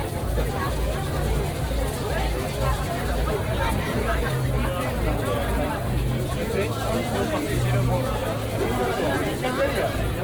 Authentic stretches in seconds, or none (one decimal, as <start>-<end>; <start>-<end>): 0.0-2.7; 4.3-10.2